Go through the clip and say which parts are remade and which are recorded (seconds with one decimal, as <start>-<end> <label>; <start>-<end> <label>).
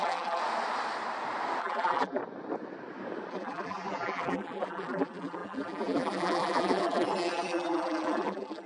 0.0-0.4 remade; 0.4-1.6 recorded; 1.6-2.2 remade; 2.2-3.3 recorded; 3.3-8.7 remade